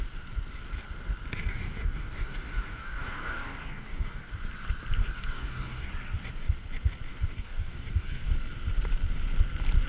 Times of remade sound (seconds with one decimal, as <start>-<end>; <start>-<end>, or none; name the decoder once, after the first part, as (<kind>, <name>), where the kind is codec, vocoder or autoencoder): 1.5-4.3 (codec, DAC); 5.0-5.9; 7.1-8.3